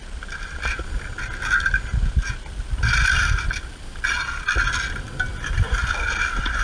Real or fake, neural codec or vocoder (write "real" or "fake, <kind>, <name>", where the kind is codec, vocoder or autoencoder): real